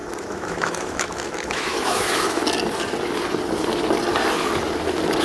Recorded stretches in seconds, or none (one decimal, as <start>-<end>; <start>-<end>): 2.4-5.2